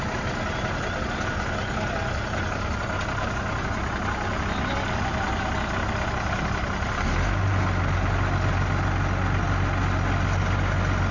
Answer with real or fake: real